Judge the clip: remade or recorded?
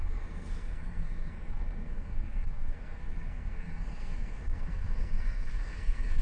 remade